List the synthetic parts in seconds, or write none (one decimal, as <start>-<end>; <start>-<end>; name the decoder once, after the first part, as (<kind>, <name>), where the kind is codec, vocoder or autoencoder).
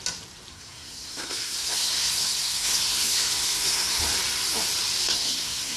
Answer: 0.5-4.0 (codec, SNAC); 5.0-5.8